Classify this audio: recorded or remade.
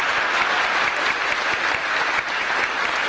recorded